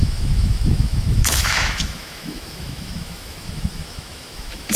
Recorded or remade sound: remade